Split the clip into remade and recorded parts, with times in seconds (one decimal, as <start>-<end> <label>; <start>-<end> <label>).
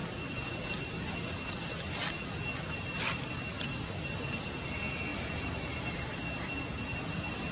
0.0-7.5 recorded